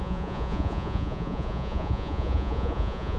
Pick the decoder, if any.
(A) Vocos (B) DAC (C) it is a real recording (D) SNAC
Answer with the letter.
A